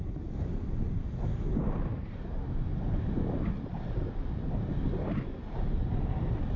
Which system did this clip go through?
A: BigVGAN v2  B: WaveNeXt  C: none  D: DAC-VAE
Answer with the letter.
C